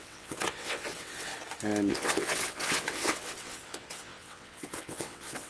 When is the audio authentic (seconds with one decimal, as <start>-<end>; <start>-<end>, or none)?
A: 1.3-1.9